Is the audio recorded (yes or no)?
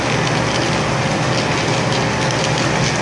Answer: yes